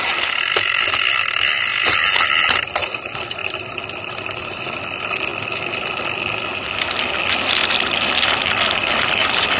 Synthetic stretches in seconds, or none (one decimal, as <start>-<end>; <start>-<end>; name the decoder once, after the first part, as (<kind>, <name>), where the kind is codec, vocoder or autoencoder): none